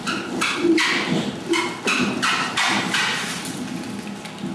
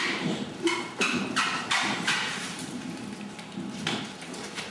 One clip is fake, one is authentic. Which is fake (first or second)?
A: second